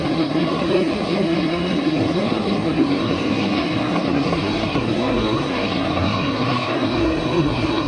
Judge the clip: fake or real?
fake